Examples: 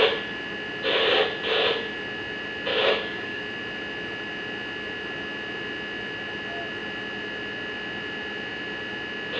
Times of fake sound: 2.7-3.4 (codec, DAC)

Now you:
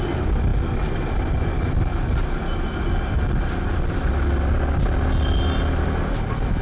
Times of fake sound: none

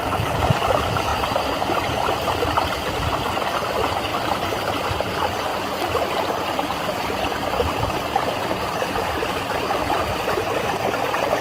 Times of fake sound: none